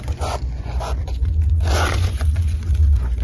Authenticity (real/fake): fake